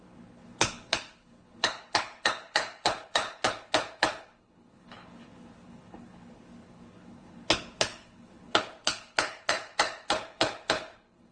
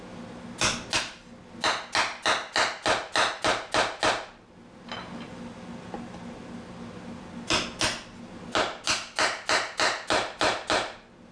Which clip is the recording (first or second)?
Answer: second